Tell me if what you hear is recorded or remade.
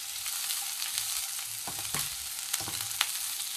recorded